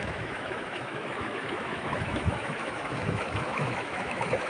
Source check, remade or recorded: remade